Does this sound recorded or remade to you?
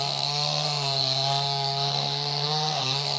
remade